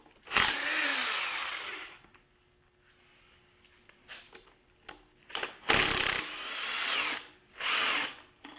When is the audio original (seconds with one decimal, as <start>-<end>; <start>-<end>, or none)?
0.0-8.6